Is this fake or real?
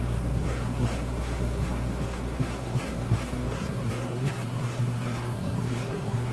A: fake